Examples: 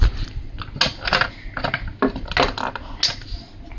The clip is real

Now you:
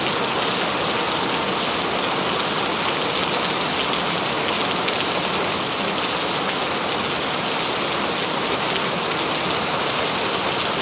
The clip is real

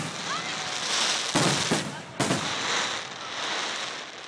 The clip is real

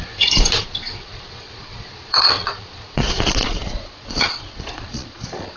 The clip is fake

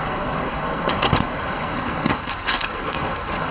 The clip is fake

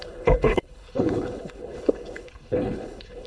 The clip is fake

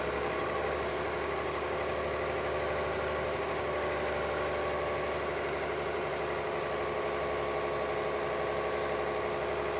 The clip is real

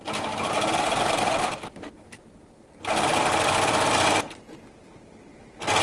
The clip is real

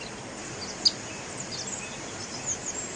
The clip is real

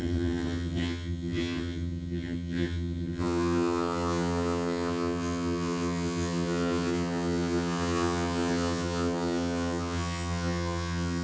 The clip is fake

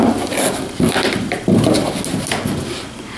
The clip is real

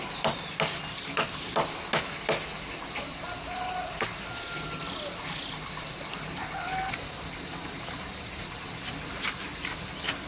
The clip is real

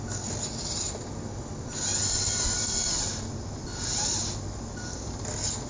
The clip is real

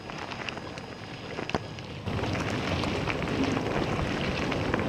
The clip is real